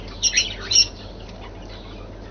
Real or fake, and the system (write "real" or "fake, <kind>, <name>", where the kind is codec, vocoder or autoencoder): real